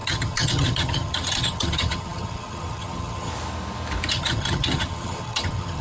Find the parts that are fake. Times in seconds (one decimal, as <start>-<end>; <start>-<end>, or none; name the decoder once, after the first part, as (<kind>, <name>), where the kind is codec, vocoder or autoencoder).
0.0-3.3 (vocoder, HiFi-GAN); 4.1-5.8